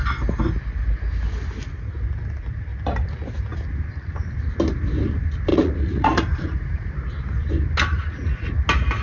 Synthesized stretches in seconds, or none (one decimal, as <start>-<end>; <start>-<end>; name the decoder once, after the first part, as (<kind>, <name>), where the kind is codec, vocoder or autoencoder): 5.5-6.9 (vocoder, Vocos); 7.9-8.5